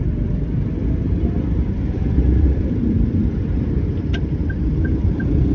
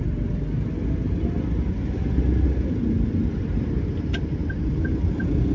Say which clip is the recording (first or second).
second